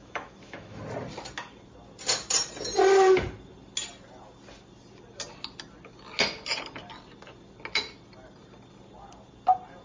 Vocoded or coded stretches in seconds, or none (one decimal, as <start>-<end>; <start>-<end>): 0.0-0.8